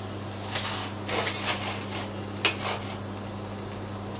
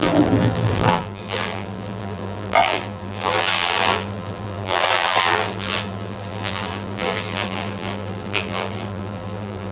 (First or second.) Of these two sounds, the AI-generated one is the second